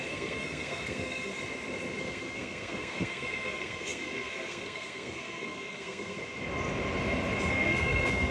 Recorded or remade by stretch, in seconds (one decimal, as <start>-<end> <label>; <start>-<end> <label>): 0.0-1.3 remade; 1.3-2.0 recorded; 2.0-6.2 remade; 6.2-7.5 recorded; 7.5-8.3 remade